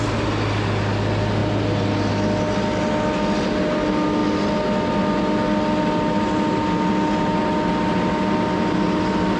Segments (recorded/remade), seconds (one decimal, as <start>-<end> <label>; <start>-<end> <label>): 0.0-9.4 recorded